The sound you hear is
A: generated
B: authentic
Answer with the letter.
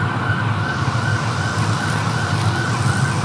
B